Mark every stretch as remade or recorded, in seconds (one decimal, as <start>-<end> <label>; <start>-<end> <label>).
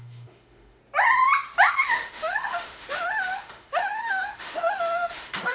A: 0.0-0.8 remade; 0.8-1.7 recorded; 1.7-5.5 remade